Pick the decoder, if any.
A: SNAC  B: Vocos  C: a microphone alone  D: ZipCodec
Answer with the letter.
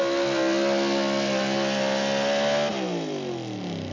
C